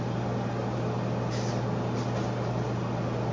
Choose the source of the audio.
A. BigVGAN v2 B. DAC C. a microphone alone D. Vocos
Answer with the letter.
C